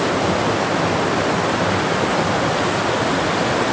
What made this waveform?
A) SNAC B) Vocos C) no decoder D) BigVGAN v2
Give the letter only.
C